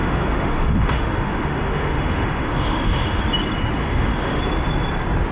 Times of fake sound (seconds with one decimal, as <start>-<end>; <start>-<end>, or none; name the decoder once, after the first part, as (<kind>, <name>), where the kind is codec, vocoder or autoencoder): 0.0-3.2 (autoencoder, DAC-VAE); 3.8-4.4